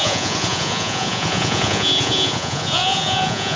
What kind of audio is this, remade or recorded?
remade